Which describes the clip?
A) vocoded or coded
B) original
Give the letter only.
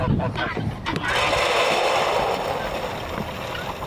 B